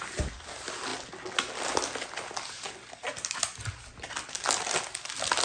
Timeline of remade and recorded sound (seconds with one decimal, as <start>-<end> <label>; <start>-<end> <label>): 0.0-5.4 recorded